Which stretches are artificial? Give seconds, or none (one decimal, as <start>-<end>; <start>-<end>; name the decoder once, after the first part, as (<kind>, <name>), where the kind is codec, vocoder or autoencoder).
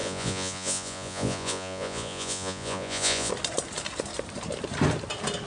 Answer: 0.0-3.3 (vocoder, Vocos)